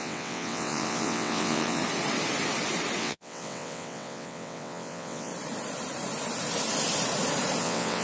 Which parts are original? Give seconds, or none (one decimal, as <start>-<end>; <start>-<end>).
1.8-3.0; 5.3-7.6

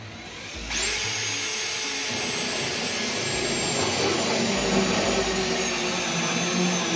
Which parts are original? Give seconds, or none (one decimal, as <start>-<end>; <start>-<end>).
0.0-7.0